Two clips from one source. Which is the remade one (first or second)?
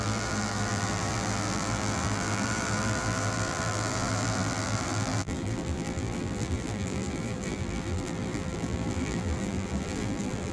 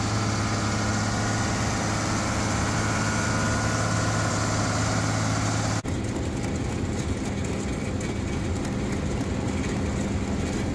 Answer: first